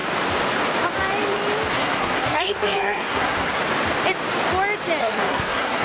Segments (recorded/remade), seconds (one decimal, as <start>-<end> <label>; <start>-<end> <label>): 0.0-1.7 recorded; 1.7-3.6 remade; 3.6-5.0 recorded; 5.0-5.8 remade